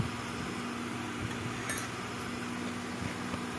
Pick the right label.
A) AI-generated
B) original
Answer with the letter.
B